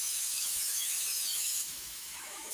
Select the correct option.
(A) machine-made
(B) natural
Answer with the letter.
A